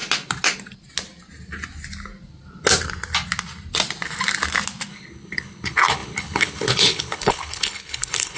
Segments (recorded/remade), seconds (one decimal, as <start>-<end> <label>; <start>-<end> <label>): 0.0-4.9 recorded; 4.9-8.4 remade